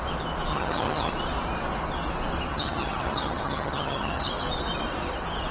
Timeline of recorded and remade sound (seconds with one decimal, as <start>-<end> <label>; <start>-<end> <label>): 0.0-0.5 recorded; 0.5-1.1 remade; 1.1-2.5 recorded; 2.5-4.3 remade; 4.3-5.5 recorded